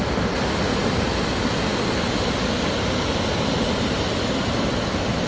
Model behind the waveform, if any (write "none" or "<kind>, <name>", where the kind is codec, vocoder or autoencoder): none